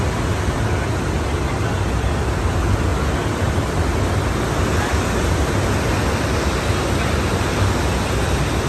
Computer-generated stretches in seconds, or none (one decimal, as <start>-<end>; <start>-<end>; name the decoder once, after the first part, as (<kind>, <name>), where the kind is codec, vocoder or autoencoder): none